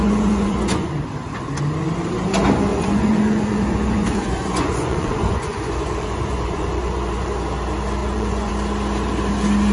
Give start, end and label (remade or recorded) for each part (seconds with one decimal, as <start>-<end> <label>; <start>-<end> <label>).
0.0-0.9 remade; 0.9-2.7 recorded; 2.7-7.3 remade; 7.3-8.0 recorded; 8.0-8.5 remade; 8.5-9.7 recorded